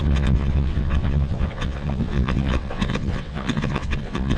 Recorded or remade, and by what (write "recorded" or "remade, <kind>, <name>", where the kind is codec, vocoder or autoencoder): remade, vocoder, WaveNeXt